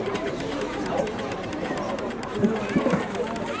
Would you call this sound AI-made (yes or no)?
yes